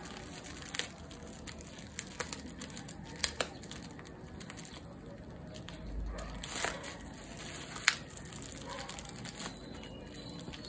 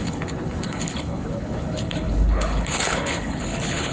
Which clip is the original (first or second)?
first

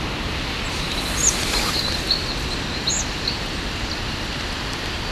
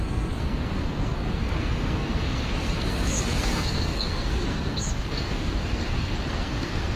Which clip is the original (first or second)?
first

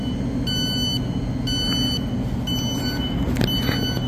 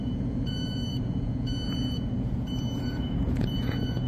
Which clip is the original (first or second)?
first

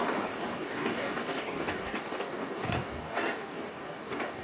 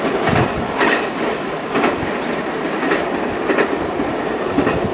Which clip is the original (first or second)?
second